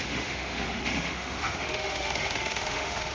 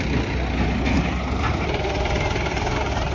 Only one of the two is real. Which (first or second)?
second